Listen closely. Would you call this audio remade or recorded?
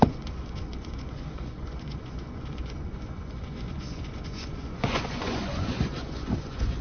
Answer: remade